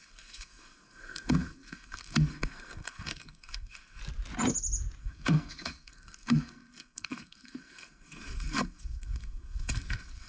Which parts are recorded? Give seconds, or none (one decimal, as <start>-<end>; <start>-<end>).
4.0-5.0